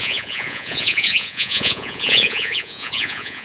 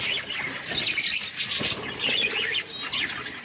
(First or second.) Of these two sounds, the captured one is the second